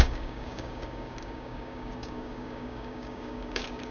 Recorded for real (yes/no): no